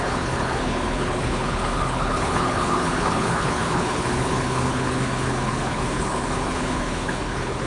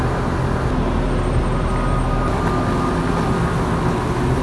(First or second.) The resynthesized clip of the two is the first